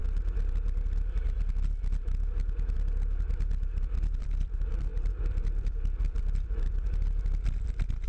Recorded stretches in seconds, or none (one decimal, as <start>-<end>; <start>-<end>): 0.0-4.2